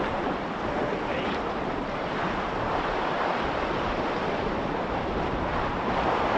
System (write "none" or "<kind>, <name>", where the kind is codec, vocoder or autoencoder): vocoder, BigVGAN v2